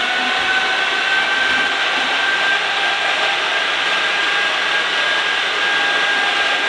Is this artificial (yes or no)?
no